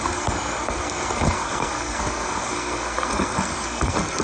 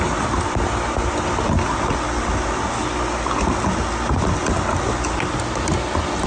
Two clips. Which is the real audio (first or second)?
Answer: second